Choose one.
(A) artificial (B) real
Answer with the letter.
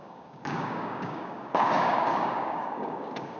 A